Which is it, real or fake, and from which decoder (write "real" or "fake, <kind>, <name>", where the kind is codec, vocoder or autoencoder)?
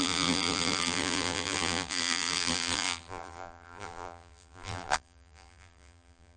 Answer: fake, vocoder, BigVGAN v2